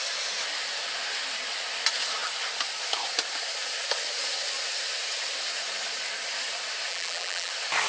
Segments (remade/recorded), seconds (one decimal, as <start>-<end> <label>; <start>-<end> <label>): 0.0-6.9 recorded; 6.9-7.5 remade; 7.5-7.9 recorded